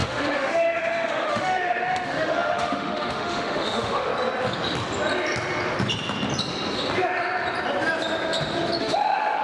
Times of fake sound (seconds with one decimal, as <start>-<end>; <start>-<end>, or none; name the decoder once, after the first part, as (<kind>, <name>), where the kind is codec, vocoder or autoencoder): 0.0-4.1 (autoencoder, DAC-VAE); 8.8-9.4